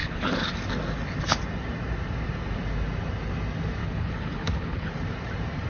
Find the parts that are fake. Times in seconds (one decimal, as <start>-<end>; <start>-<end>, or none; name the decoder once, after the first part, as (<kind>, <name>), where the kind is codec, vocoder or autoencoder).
0.0-0.5 (codec, HILCodec); 3.8-4.9